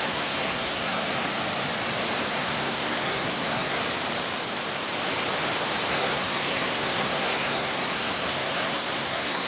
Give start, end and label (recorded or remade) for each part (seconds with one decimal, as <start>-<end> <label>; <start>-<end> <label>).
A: 0.0-1.0 remade; 1.0-2.3 recorded; 2.3-3.8 remade; 3.8-5.9 recorded; 5.9-9.5 remade